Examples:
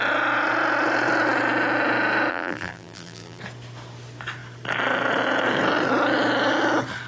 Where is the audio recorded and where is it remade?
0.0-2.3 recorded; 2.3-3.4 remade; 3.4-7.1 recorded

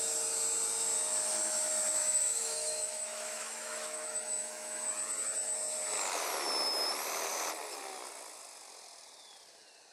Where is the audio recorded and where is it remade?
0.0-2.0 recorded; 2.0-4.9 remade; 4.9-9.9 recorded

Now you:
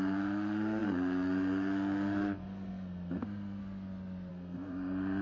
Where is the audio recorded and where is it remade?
0.0-3.6 remade; 3.6-4.3 recorded; 4.3-5.2 remade